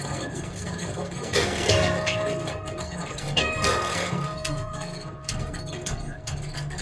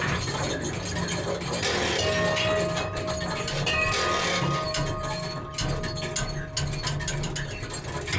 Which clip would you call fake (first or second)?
first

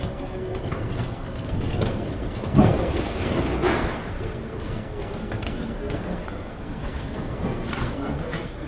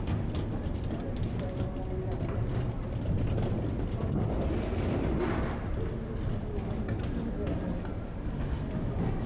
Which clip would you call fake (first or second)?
first